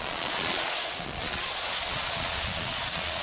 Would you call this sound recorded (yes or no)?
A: no